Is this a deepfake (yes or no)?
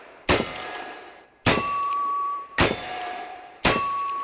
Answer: yes